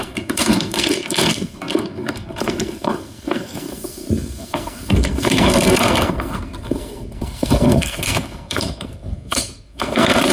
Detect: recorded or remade remade